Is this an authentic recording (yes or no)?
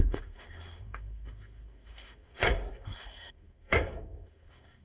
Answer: no